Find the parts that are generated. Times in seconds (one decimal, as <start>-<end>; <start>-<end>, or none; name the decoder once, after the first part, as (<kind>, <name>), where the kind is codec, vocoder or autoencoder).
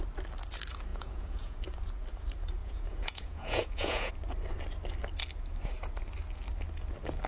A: 0.9-1.6 (vocoder, Vocos); 2.6-4.1